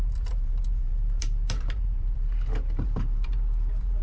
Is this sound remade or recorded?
remade